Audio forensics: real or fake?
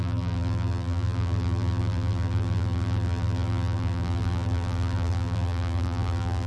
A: fake